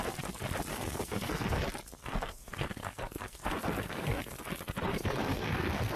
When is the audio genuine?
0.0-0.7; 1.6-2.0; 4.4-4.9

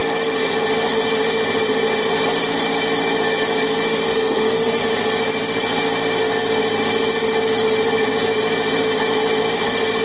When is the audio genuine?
0.0-4.1; 4.8-10.0

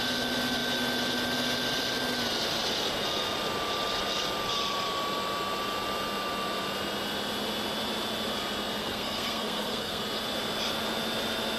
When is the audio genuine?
0.0-8.8; 10.0-11.6